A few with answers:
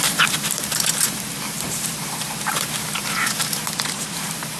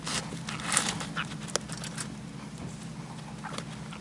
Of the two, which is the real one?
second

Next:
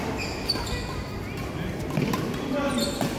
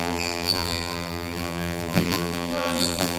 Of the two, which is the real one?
first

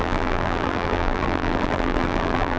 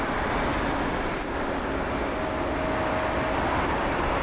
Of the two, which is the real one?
second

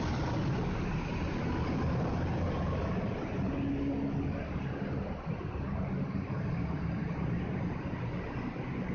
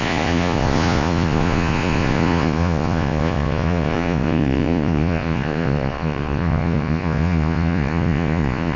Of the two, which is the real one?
first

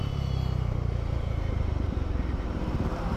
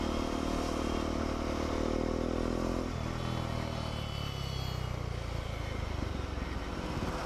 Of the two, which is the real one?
second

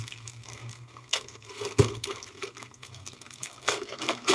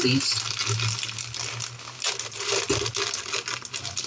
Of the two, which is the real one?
second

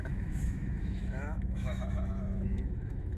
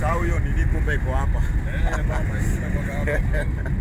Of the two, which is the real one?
second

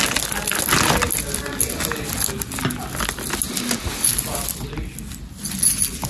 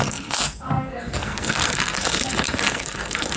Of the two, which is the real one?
first